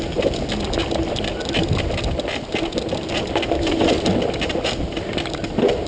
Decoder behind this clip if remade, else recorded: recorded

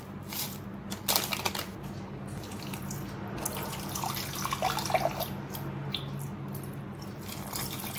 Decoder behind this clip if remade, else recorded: recorded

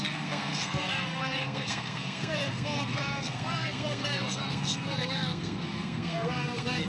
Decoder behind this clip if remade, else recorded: remade, codec, SNAC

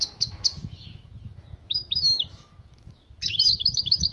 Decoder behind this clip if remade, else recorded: remade, autoencoder, DAC-VAE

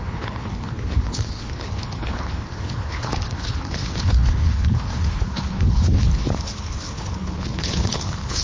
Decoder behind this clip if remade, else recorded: remade, codec, HILCodec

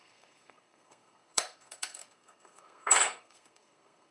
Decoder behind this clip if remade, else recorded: remade, codec, SNAC